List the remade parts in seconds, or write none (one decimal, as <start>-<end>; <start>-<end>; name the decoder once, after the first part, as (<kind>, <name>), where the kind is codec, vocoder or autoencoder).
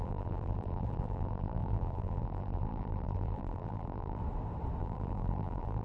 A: 0.0-4.2 (vocoder, BigVGAN v2); 4.8-5.8